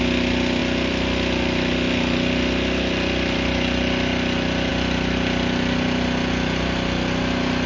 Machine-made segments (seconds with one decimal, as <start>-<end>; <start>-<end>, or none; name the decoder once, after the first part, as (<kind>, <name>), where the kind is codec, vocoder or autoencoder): none